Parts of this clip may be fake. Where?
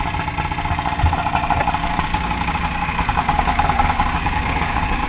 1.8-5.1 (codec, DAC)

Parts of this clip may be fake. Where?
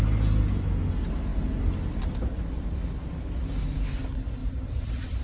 4.4-5.2 (vocoder, BigVGAN v2)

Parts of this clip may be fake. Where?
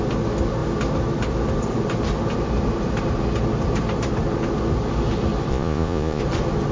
5.5-6.2 (vocoder, Vocos)